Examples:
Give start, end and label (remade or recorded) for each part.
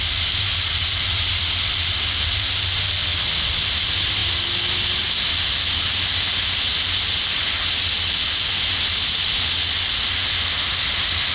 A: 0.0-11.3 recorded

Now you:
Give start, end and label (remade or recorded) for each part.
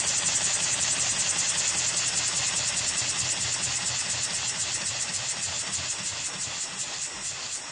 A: 0.0-7.7 recorded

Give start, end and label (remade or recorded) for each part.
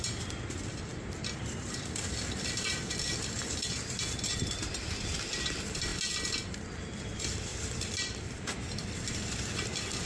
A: 0.0-5.9 remade; 5.9-7.0 recorded; 7.0-10.1 remade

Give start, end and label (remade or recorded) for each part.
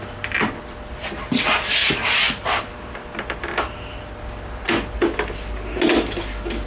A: 0.0-1.8 recorded; 1.8-5.5 remade; 5.5-6.7 recorded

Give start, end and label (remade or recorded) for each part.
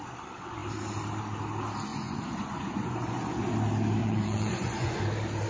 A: 0.0-1.9 recorded; 1.9-3.5 remade; 3.5-4.0 recorded; 4.0-5.0 remade; 5.0-5.5 recorded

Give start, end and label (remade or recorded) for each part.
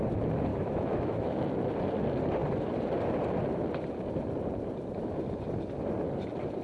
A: 0.0-0.5 recorded; 0.5-1.4 remade; 1.4-6.6 recorded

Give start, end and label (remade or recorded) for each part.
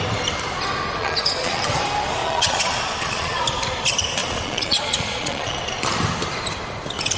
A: 0.0-1.0 recorded; 1.0-1.6 remade; 1.6-2.2 recorded; 2.2-3.4 remade; 3.4-4.2 recorded; 4.2-5.6 remade; 5.6-7.2 recorded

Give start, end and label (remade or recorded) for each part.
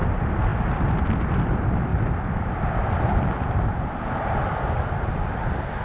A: 0.0-1.9 recorded; 1.9-4.7 remade; 4.7-5.8 recorded